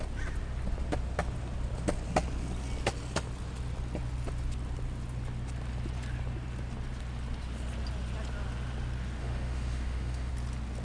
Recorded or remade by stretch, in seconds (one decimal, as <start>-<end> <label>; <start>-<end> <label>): 0.0-9.2 recorded; 9.2-10.3 remade; 10.3-10.8 recorded